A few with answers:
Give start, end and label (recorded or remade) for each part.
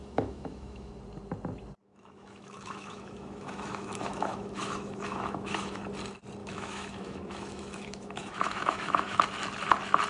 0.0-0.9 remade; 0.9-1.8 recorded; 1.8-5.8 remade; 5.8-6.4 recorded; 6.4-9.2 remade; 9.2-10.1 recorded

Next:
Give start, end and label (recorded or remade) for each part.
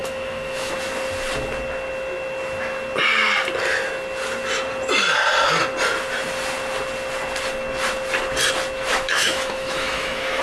0.0-0.7 remade; 0.7-8.9 recorded; 8.9-10.4 remade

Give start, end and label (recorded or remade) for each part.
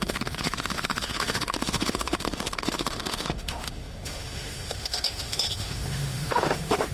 0.0-6.9 remade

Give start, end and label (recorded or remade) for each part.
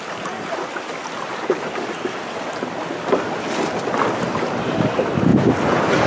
0.0-6.1 recorded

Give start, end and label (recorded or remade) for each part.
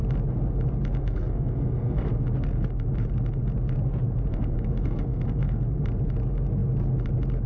0.0-1.0 recorded; 1.0-2.1 remade; 2.1-4.3 recorded; 4.3-5.6 remade; 5.6-7.5 recorded